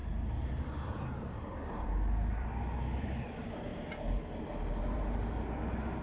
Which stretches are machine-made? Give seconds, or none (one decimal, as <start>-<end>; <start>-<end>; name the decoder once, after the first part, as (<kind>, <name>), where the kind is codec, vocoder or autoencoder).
0.9-3.7 (vocoder, BigVGAN v2); 4.4-6.0